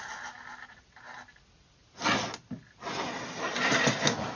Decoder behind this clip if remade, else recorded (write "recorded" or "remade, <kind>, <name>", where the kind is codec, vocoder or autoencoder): recorded